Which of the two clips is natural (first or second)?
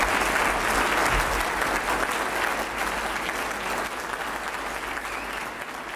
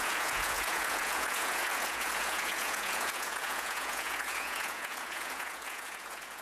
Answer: first